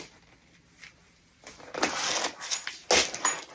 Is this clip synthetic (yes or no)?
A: no